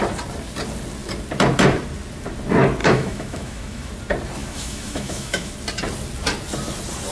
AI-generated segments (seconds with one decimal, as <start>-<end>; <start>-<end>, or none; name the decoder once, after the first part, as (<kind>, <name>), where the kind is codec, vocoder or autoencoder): 2.8-3.9 (autoencoder, DAC-VAE); 4.4-5.5